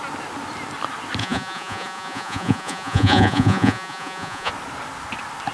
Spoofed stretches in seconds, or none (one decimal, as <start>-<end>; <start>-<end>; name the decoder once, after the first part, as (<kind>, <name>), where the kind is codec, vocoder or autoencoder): 1.2-4.5 (vocoder, Vocos)